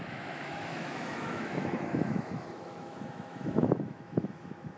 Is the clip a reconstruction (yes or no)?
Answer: yes